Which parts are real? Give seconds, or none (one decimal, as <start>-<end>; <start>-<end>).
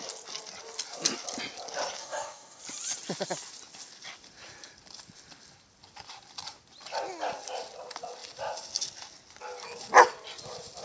0.0-2.0; 2.6-10.8